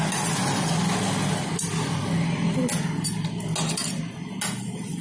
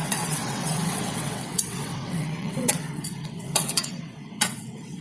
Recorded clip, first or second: first